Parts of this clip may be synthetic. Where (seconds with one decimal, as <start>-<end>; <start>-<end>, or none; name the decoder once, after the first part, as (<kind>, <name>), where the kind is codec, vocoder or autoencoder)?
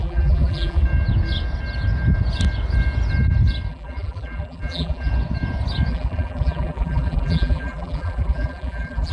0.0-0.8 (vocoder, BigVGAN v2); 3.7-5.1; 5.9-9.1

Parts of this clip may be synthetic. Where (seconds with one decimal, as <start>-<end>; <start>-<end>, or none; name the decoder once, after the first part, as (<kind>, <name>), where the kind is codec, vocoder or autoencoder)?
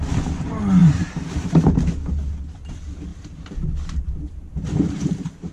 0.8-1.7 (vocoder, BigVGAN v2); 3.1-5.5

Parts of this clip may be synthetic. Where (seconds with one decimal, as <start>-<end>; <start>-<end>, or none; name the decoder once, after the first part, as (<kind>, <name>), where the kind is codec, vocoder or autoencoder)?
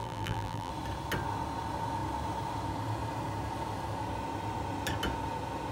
0.0-0.7 (vocoder, BigVGAN v2)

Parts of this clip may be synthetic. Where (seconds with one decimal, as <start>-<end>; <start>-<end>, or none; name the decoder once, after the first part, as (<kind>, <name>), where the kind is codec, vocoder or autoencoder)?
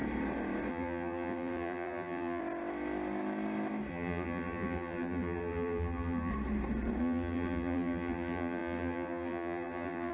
0.7-2.4 (vocoder, BigVGAN v2); 3.9-6.3; 7.0-10.1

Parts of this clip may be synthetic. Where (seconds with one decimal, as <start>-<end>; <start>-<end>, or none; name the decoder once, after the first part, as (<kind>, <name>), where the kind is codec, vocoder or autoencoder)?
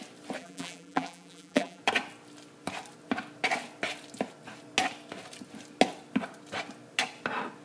0.4-1.8 (vocoder, BigVGAN v2)